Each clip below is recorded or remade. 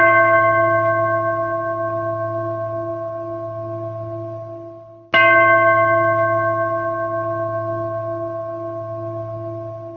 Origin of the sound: recorded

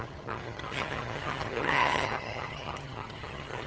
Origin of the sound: remade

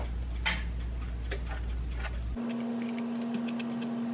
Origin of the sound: recorded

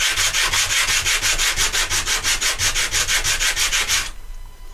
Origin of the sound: recorded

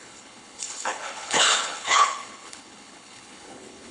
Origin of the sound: remade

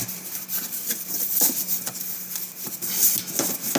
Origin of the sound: recorded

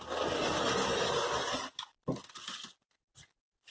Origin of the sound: recorded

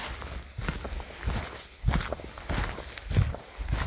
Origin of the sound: recorded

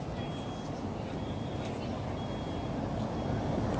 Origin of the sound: recorded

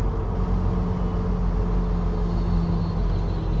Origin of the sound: recorded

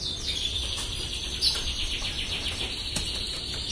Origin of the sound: recorded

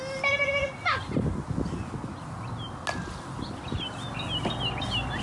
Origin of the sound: recorded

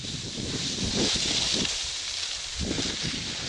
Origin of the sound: recorded